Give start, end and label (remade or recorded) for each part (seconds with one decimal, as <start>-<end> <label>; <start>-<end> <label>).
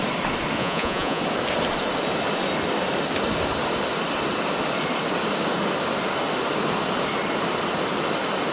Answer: 0.0-0.6 recorded; 0.6-1.2 remade; 1.2-8.5 recorded